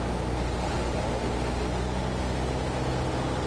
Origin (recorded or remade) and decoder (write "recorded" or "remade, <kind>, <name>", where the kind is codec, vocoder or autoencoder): recorded